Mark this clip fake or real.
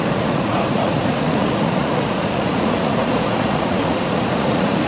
fake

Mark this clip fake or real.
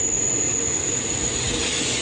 real